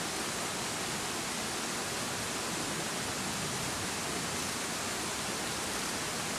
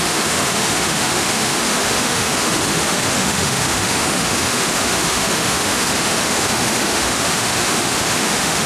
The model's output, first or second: second